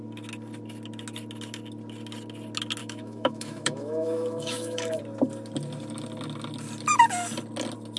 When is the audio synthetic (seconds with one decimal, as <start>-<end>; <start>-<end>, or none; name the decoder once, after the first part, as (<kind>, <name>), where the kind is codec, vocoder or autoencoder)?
2.8-5.0 (autoencoder, DAC-VAE)